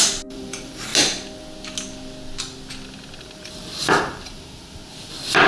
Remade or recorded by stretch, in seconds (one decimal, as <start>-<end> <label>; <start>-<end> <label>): 0.0-0.9 remade; 0.9-3.2 recorded; 3.2-4.8 remade; 4.8-5.5 recorded